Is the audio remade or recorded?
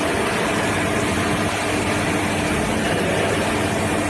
recorded